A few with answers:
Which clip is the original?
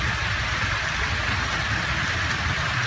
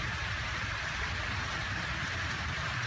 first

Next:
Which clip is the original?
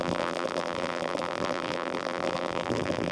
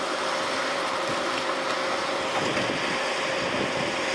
second